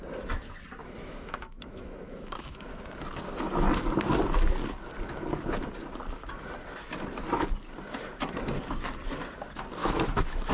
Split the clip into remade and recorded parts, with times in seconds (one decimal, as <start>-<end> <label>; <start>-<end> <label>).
0.0-0.8 recorded; 0.8-2.7 remade; 2.7-9.8 recorded; 9.8-10.5 remade

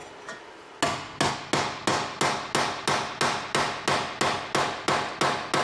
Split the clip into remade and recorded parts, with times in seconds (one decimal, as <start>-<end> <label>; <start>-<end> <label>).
0.0-5.6 recorded

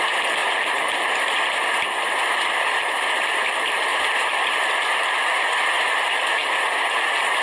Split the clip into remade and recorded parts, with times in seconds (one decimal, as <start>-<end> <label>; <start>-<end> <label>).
0.0-6.4 remade; 6.4-7.4 recorded

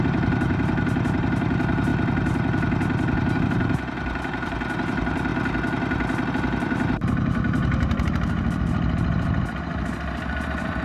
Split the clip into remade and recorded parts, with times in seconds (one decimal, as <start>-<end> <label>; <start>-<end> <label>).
0.0-1.9 remade; 1.9-3.4 recorded; 3.4-5.3 remade; 5.3-6.3 recorded; 6.3-10.8 remade

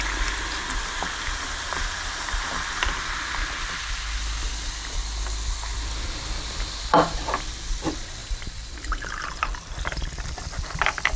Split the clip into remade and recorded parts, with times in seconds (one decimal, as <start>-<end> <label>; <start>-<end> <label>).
0.0-5.7 recorded; 5.7-7.3 remade; 7.3-8.2 recorded; 8.2-10.6 remade; 10.6-11.2 recorded

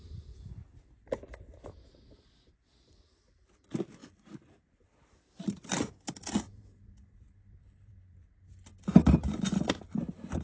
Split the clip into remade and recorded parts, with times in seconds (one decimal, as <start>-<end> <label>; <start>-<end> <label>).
0.0-0.6 remade; 0.6-2.5 recorded; 2.5-8.3 remade; 8.3-9.2 recorded; 9.2-10.4 remade

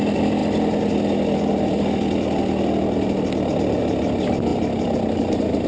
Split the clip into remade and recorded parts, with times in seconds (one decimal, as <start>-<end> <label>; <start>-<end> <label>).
0.0-5.7 recorded